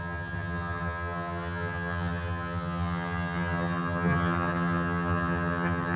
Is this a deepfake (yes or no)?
yes